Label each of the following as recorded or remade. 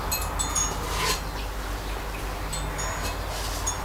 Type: recorded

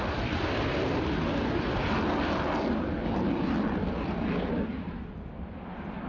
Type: remade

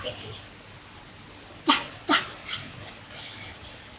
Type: recorded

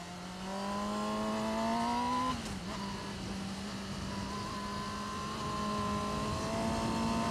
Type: recorded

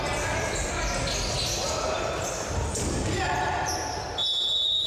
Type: recorded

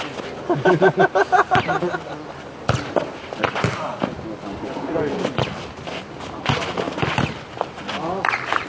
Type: recorded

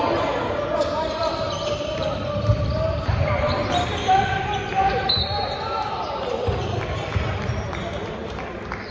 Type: remade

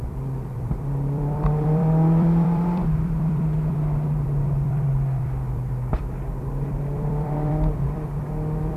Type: remade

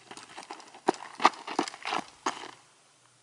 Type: recorded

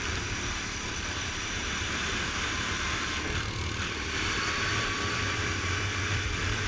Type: remade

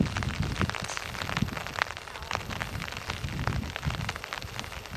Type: recorded